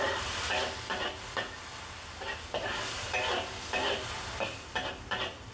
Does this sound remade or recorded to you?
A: recorded